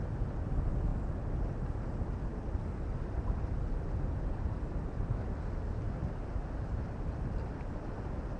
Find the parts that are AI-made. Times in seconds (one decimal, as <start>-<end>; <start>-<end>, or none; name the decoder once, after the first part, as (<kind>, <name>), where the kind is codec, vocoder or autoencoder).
none